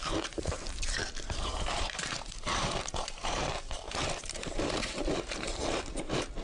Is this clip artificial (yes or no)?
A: yes